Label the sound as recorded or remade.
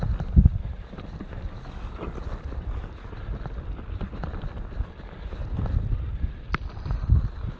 recorded